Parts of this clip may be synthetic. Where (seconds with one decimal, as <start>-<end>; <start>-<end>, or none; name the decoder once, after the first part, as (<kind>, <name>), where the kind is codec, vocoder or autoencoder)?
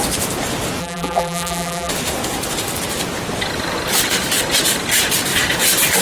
0.8-1.9 (vocoder, BigVGAN v2)